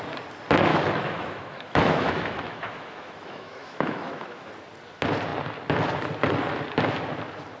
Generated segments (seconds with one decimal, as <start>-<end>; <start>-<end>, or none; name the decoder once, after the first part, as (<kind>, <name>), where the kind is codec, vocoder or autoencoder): 0.7-4.5 (autoencoder, DAC-VAE)